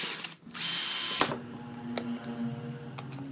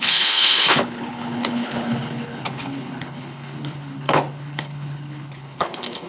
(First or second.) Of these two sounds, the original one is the first